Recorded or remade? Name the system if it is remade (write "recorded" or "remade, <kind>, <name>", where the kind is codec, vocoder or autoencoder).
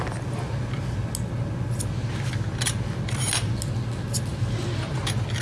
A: recorded